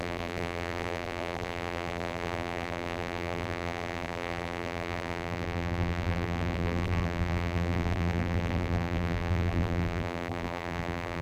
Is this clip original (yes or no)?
no